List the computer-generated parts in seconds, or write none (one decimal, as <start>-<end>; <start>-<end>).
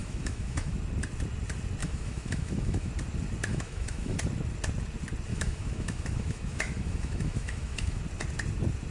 0.0-0.7; 1.8-2.9; 3.5-4.2; 5.3-8.0